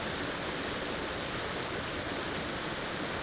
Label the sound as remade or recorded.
recorded